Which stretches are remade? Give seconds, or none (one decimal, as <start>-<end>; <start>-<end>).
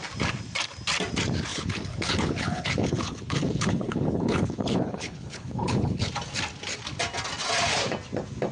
1.5-6.1